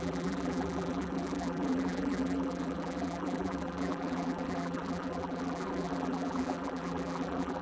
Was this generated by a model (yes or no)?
yes